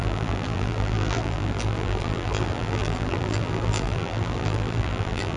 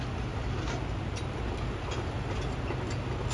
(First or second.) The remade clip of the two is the first